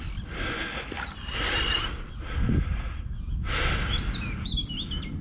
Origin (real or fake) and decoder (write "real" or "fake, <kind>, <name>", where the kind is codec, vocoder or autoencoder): real